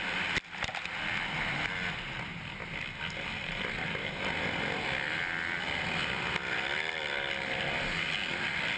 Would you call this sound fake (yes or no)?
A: no